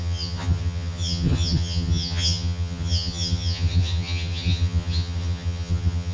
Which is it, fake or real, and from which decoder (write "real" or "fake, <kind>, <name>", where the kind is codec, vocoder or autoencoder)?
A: fake, vocoder, HiFi-GAN